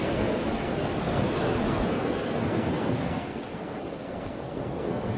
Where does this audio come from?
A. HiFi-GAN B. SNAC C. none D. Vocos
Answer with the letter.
B